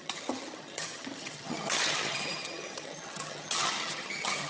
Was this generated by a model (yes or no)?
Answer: yes